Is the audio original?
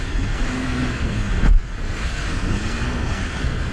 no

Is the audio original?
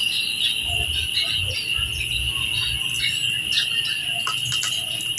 yes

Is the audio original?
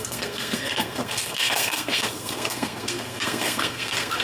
no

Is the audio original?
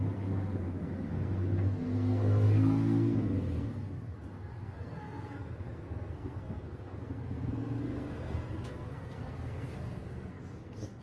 no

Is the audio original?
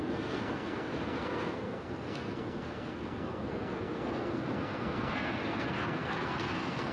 no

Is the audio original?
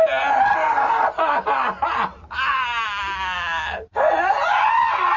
yes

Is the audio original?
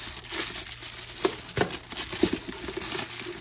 yes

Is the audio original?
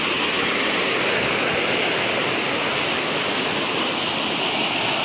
yes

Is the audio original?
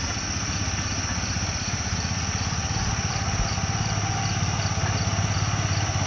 yes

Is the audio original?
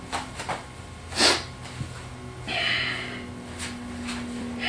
yes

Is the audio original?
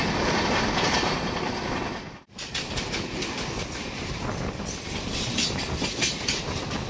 yes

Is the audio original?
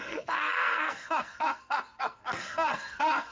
no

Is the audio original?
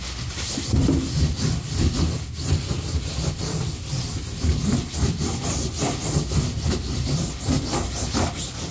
yes